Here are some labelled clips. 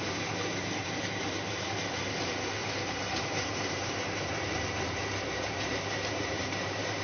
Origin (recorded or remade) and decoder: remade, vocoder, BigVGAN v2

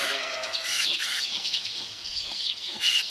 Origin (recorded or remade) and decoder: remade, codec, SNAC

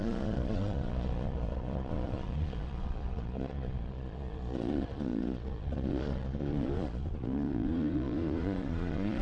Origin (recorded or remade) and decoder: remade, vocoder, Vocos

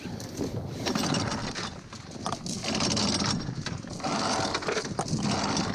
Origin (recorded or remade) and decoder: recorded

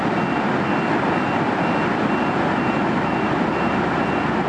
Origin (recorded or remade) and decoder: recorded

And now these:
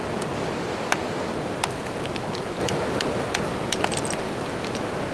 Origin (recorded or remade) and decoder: recorded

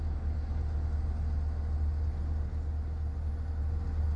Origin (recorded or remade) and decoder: recorded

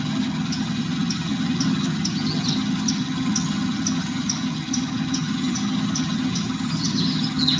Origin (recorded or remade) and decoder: remade, vocoder, HiFi-GAN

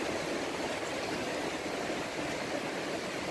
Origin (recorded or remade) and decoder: recorded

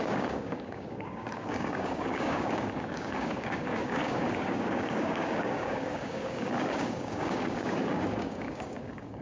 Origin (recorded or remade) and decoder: remade, codec, DAC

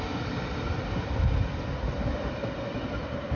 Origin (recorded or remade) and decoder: recorded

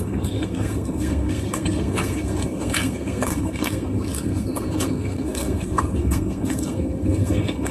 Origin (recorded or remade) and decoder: remade, codec, SNAC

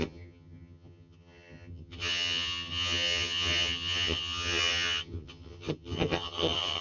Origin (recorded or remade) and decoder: remade, vocoder, HiFi-GAN